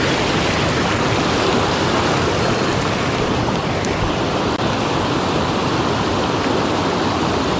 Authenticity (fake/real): real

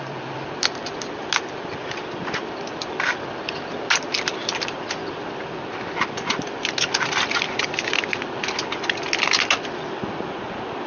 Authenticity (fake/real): real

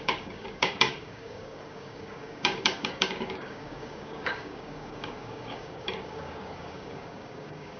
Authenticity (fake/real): fake